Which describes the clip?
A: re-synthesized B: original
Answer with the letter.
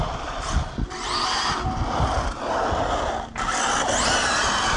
B